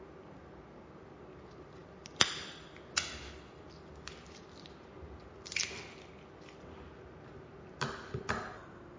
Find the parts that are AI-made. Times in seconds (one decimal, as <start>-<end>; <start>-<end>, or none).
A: 1.8-2.7